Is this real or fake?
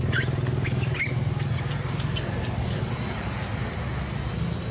real